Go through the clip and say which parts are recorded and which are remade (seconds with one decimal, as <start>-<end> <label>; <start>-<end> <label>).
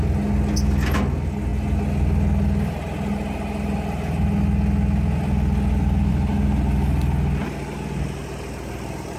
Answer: 0.0-9.2 recorded